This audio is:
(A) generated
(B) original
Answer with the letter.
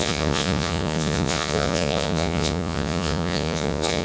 A